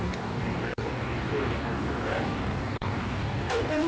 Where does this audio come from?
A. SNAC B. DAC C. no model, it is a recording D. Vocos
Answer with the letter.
B